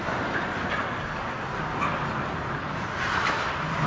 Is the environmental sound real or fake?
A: real